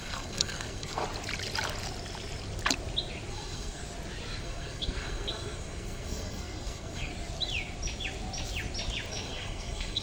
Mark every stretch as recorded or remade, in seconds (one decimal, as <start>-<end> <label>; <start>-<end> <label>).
0.0-1.0 remade; 1.0-3.3 recorded; 3.3-3.8 remade; 3.8-4.4 recorded; 4.4-7.1 remade; 7.1-9.1 recorded; 9.1-10.0 remade